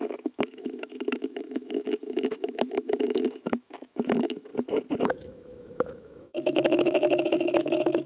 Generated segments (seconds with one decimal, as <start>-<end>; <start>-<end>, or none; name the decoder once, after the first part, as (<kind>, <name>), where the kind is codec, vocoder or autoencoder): 0.0-4.5 (autoencoder, DAC-VAE); 5.0-8.1